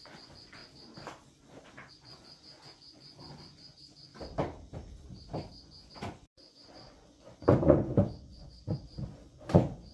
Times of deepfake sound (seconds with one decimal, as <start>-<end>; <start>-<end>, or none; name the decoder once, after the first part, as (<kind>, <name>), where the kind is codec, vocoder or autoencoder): 0.0-0.6 (vocoder, Vocos); 1.9-4.1; 5.5-9.9